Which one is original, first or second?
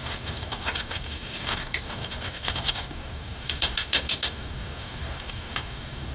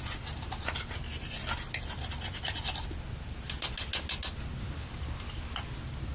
second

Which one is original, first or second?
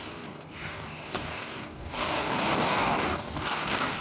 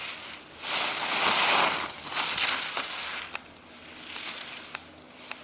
second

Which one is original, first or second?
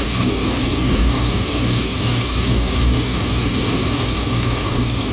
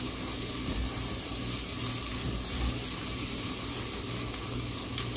second